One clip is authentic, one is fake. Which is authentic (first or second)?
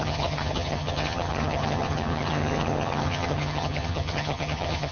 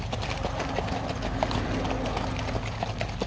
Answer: second